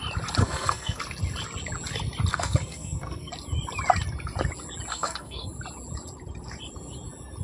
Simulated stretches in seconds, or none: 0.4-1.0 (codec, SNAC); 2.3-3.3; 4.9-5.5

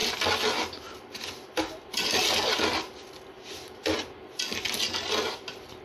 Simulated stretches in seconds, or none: none

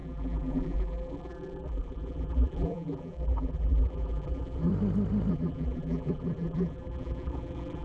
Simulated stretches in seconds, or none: 0.0-4.7 (vocoder, BigVGAN v2); 5.3-7.8

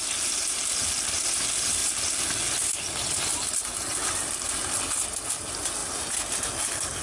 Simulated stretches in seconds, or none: 3.9-4.5 (vocoder, BigVGAN v2)

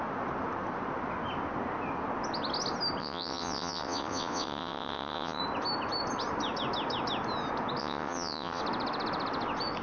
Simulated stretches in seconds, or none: 3.0-5.4 (vocoder, WaveNeXt); 7.8-8.6